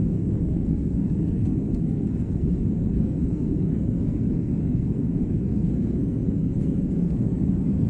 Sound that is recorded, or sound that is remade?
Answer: remade